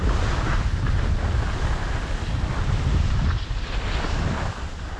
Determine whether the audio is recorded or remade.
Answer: recorded